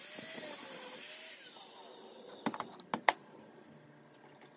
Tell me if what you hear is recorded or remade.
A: recorded